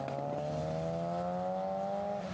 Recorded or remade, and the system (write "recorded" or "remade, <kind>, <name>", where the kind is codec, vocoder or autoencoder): recorded